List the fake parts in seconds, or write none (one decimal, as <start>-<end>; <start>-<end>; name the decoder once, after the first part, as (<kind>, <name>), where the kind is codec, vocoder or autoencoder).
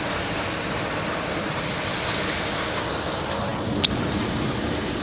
none